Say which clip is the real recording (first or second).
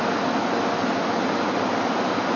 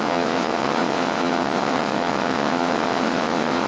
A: first